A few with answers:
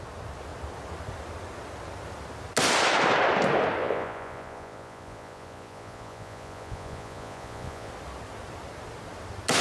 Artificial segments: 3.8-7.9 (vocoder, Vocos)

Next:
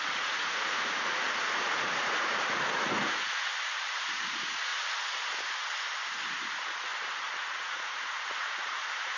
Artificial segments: 0.0-4.7 (vocoder, Vocos); 6.3-6.9; 7.6-9.2

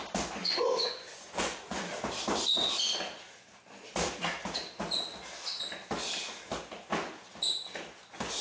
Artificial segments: 0.4-1.8 (vocoder, Vocos)